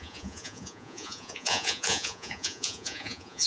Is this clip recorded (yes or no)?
no